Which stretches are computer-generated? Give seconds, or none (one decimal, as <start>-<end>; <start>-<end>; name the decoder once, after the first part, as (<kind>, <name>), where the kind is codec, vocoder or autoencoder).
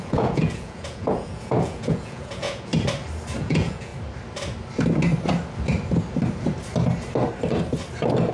0.0-2.7 (vocoder, Vocos); 3.4-3.9